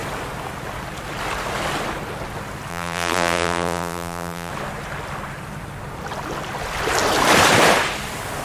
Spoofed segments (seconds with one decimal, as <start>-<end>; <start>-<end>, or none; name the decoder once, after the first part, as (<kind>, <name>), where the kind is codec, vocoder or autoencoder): 2.7-4.5 (vocoder, BigVGAN v2)